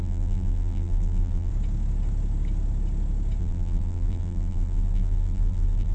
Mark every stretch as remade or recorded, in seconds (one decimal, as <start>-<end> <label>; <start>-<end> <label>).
0.0-1.5 remade; 1.5-3.4 recorded; 3.4-5.9 remade